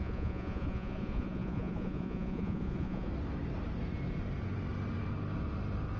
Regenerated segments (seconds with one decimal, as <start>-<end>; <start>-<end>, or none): 0.0-3.1